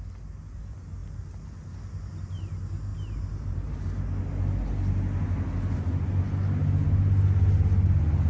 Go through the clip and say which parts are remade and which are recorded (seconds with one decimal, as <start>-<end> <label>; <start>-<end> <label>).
0.0-8.3 recorded